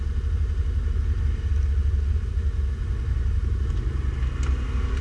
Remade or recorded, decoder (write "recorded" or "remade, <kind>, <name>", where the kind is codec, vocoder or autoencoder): recorded